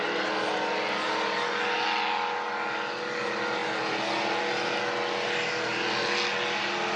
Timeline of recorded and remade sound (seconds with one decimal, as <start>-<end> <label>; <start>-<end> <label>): 0.0-7.0 recorded